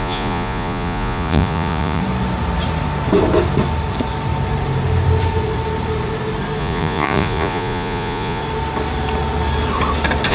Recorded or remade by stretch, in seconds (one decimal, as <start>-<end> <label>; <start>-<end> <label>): 0.0-2.0 remade; 2.0-6.6 recorded; 6.6-8.4 remade; 8.4-10.3 recorded